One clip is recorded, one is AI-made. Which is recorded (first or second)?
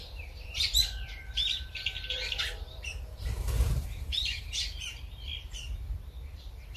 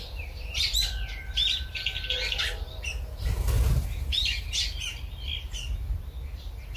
second